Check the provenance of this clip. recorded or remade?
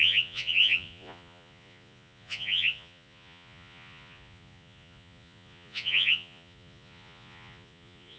remade